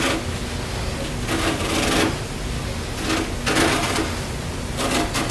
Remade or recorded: recorded